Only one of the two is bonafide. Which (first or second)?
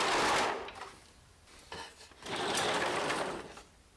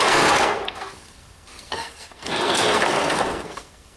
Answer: first